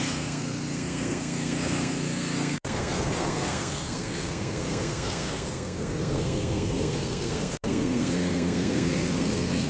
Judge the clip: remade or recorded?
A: remade